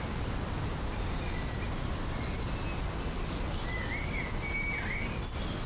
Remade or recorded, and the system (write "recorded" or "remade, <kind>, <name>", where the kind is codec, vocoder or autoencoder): recorded